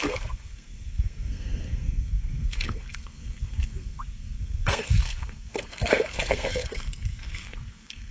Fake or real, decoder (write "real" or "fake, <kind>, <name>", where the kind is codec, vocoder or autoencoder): fake, codec, SNAC